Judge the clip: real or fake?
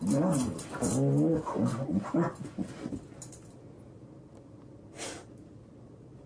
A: real